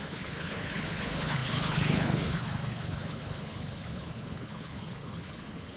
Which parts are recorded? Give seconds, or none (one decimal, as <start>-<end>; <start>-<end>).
none